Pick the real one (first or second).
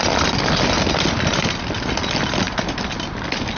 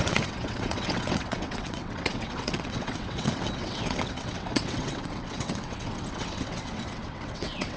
first